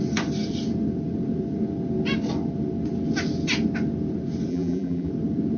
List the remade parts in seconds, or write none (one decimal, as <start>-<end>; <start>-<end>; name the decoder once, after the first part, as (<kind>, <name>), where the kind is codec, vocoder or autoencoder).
4.5-5.1 (vocoder, BigVGAN v2)

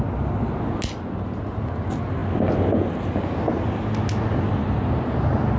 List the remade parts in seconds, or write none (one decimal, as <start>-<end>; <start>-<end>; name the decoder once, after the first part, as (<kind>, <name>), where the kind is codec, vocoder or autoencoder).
none

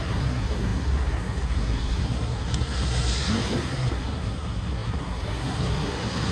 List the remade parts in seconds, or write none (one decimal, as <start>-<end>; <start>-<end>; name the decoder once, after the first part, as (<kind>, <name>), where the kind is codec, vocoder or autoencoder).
0.0-6.3 (codec, SNAC)